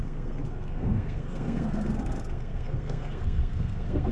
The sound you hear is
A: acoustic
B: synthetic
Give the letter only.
B